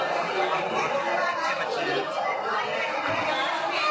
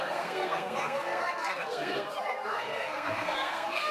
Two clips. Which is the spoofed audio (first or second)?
second